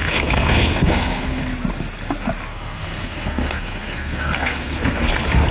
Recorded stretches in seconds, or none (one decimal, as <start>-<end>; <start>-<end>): 1.4-2.5; 5.1-5.5